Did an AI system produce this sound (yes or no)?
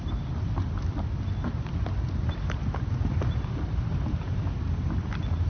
no